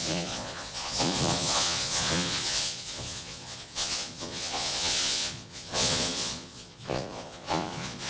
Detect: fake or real fake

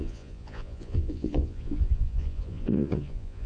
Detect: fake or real fake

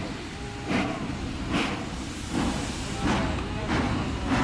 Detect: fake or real real